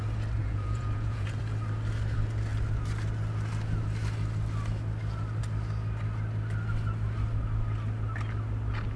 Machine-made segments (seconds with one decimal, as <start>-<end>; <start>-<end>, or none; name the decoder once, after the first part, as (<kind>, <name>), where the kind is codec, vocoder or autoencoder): 0.4-1.4 (vocoder, Vocos)